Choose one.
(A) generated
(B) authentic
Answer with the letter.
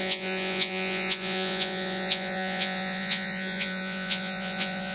A